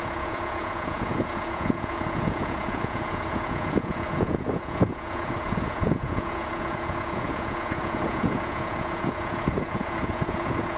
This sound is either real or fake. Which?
fake